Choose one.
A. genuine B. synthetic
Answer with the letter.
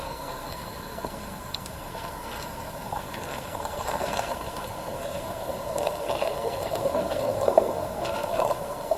B